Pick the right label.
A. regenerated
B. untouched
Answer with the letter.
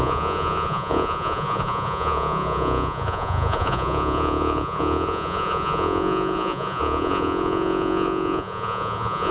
A